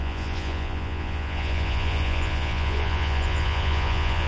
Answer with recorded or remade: remade